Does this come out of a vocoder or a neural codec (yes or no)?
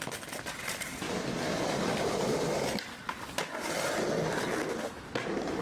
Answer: no